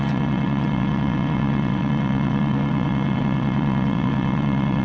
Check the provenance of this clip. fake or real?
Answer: fake